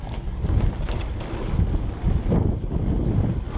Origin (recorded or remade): recorded